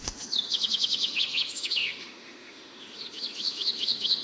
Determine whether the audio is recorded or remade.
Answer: remade